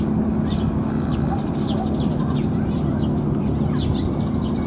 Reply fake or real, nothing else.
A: real